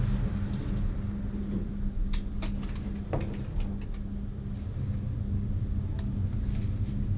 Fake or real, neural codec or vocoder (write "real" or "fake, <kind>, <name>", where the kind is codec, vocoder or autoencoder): real